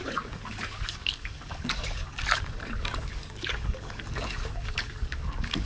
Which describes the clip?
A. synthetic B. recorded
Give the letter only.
A